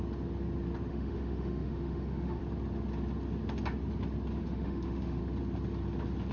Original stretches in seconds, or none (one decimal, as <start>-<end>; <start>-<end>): 0.0-0.9; 2.4-4.4; 5.2-6.3